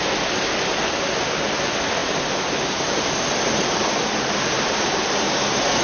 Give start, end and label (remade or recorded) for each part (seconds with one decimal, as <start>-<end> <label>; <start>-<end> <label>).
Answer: 0.0-2.0 recorded; 2.0-5.8 remade